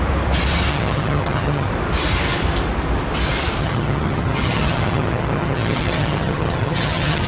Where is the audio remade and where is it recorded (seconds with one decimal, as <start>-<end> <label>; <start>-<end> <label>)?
0.0-0.7 recorded; 0.7-1.7 remade; 1.7-3.6 recorded; 3.6-7.3 remade